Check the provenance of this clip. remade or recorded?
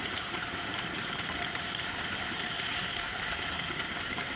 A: remade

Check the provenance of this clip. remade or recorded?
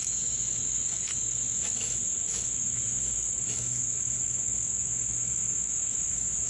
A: remade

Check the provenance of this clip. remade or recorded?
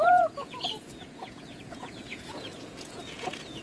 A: remade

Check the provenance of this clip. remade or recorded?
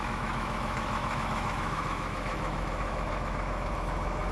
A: remade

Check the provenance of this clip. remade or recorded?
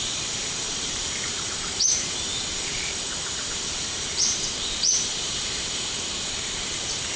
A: remade